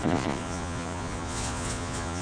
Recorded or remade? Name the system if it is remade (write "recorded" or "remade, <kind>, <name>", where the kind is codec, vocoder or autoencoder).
remade, vocoder, Vocos